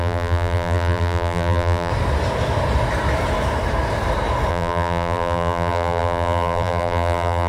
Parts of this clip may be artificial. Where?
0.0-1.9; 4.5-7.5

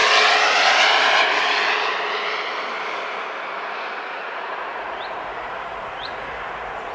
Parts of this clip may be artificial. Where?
4.1-6.9

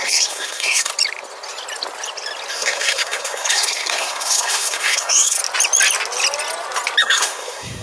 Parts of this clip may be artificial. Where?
0.0-0.9; 2.5-5.4; 7.0-7.8

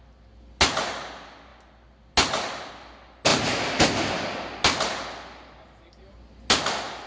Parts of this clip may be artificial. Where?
3.3-4.0